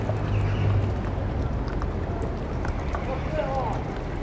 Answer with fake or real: real